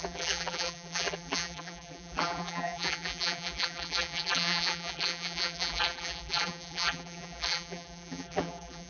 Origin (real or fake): fake